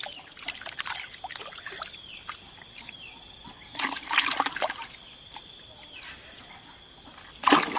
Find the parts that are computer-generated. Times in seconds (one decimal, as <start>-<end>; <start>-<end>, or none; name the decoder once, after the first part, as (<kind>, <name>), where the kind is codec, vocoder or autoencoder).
none